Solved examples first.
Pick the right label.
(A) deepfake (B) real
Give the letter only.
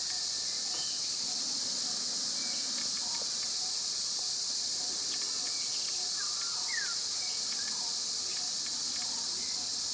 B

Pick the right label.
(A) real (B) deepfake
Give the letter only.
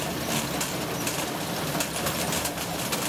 A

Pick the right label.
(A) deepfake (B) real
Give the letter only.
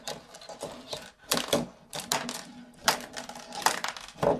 B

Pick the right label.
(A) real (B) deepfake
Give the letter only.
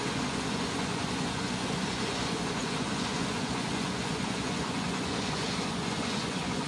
B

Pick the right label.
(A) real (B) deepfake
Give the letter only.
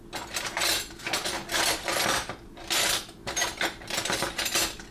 A